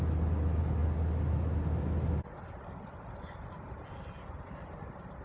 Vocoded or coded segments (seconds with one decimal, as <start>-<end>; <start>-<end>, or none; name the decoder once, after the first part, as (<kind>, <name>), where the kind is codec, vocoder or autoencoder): none